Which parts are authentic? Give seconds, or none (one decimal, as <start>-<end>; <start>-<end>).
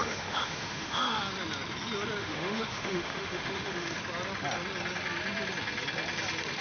1.2-2.2; 4.0-6.6